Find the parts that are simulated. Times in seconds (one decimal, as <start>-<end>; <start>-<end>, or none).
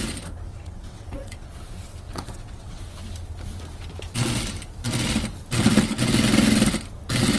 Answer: 0.5-1.5; 2.1-2.8